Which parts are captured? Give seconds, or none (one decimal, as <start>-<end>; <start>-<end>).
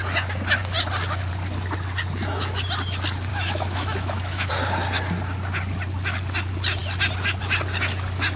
0.0-3.3; 4.5-8.4